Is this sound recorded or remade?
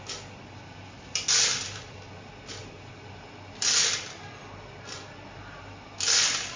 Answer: recorded